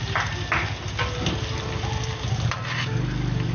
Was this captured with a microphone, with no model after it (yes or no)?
yes